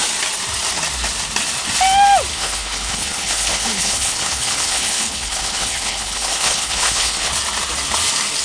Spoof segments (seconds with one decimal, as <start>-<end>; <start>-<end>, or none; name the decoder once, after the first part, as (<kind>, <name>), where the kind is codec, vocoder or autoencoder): 2.3-7.3 (codec, HILCodec)

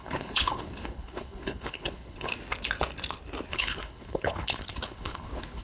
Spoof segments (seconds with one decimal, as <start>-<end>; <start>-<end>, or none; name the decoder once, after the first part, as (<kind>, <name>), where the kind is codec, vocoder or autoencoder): 0.0-2.3 (codec, HILCodec); 3.5-5.6

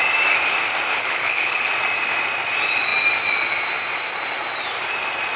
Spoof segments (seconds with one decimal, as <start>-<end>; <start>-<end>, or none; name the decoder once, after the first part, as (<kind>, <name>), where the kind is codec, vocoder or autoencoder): 0.9-1.7 (codec, HILCodec)

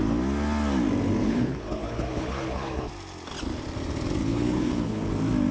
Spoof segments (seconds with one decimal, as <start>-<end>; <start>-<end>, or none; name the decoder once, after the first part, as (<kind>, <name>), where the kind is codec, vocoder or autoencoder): 1.2-2.9 (codec, HILCodec); 4.2-5.1

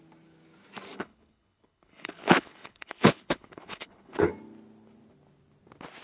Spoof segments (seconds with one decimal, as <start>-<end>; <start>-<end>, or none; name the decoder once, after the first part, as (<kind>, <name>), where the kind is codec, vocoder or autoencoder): 0.9-4.3 (codec, HILCodec)